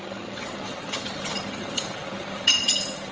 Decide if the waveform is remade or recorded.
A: remade